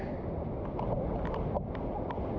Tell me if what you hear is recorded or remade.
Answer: recorded